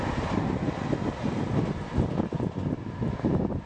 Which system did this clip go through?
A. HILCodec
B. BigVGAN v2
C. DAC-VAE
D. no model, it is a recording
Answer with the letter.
D